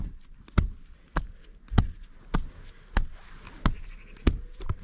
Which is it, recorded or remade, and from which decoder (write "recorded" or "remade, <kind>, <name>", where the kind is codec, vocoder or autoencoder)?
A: recorded